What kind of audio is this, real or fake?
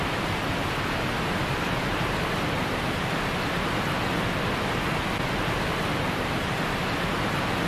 real